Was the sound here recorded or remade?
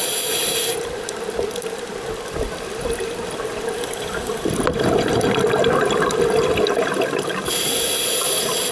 recorded